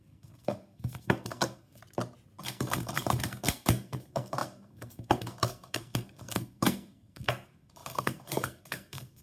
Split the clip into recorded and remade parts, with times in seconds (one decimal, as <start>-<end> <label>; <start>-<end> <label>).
0.0-1.8 remade; 1.8-2.4 recorded; 2.4-9.2 remade